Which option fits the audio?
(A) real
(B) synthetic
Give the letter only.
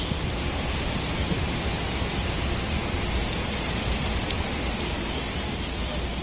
A